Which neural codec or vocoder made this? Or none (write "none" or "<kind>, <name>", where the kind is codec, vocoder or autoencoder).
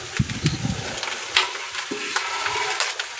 none